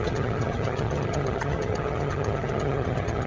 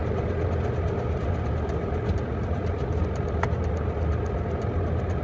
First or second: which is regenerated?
first